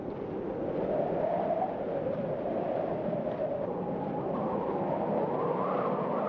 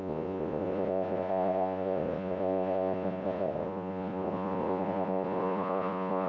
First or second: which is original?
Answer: first